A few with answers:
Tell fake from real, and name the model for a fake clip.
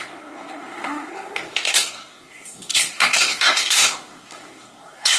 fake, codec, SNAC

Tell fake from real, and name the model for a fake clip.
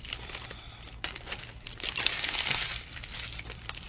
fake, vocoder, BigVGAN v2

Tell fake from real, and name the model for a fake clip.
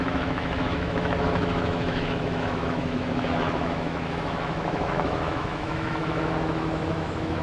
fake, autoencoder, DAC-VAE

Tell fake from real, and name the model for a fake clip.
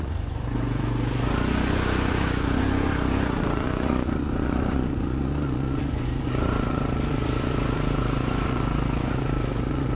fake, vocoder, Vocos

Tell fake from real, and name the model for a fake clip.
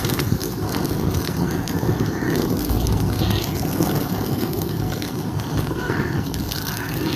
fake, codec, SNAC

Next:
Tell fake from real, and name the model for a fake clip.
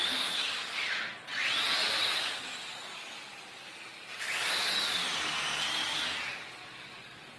real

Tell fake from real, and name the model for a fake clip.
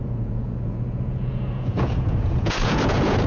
fake, vocoder, Vocos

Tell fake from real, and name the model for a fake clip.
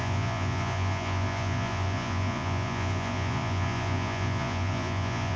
fake, vocoder, Vocos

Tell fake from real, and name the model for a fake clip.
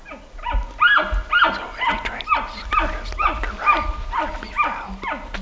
real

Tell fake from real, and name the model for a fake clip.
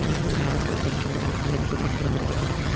fake, vocoder, HiFi-GAN